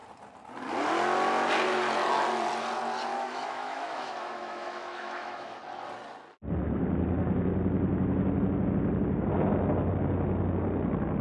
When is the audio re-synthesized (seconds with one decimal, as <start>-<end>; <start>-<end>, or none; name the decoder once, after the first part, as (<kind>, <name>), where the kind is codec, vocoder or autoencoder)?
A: 3.1-5.6 (autoencoder, DAC-VAE)